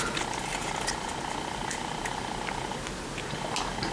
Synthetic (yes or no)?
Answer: no